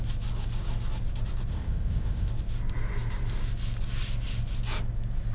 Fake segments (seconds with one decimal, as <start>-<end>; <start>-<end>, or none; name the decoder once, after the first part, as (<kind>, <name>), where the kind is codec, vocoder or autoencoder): 1.5-2.3 (codec, ZipCodec)